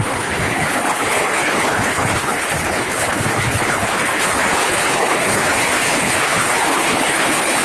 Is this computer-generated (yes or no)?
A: yes